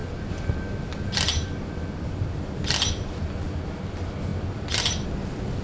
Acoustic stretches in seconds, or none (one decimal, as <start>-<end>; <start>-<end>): 0.0-5.6